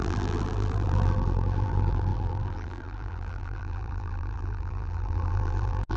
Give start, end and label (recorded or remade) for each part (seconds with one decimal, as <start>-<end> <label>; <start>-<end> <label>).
0.0-6.0 remade